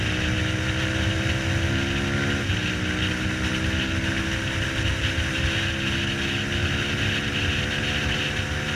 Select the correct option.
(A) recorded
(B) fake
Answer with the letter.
A